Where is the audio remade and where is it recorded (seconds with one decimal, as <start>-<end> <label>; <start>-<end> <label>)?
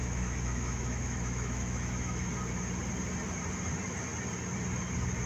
0.0-2.3 remade; 2.3-5.3 recorded